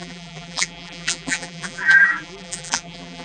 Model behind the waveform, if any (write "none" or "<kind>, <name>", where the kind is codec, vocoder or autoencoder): vocoder, BigVGAN v2